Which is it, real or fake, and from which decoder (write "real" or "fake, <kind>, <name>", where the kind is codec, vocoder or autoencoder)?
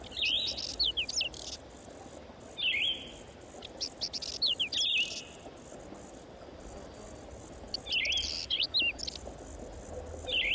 real